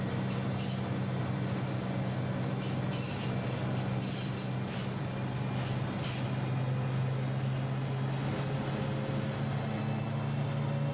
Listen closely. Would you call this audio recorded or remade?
recorded